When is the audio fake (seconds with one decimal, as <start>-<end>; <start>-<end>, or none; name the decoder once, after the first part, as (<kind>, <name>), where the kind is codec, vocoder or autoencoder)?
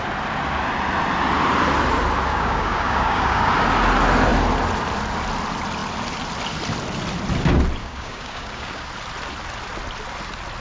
2.3-3.5 (codec, DAC); 7.8-8.9